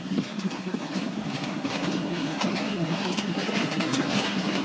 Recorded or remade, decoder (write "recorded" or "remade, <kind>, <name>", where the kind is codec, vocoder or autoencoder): remade, codec, SNAC